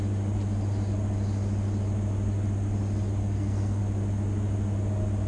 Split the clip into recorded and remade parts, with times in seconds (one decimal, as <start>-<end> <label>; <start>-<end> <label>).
0.0-3.2 recorded; 3.2-3.8 remade; 3.8-5.3 recorded